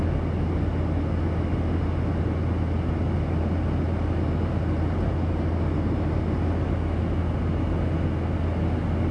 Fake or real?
real